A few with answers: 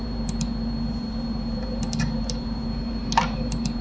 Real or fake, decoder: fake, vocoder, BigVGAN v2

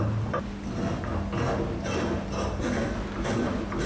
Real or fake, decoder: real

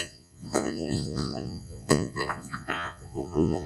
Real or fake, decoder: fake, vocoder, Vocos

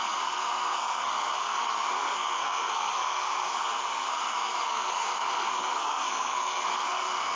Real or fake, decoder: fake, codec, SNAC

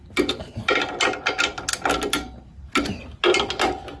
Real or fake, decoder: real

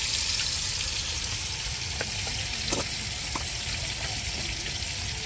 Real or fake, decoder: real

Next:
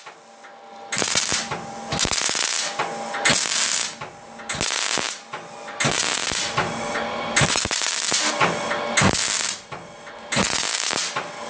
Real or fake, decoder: real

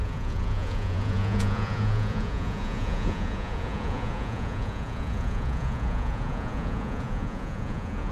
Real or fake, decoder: fake, vocoder, Vocos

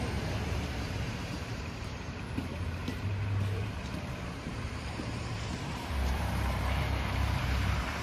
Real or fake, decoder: fake, vocoder, BigVGAN v2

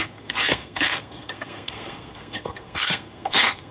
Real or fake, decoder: fake, codec, SNAC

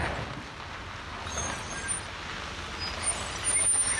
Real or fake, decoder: real